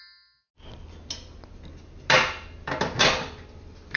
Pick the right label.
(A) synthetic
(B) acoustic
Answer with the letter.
B